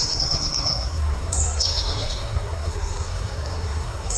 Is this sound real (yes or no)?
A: no